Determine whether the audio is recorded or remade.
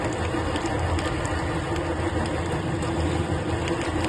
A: recorded